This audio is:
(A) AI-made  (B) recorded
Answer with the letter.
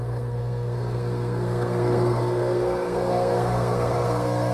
A